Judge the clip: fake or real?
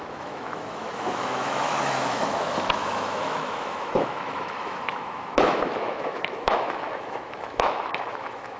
fake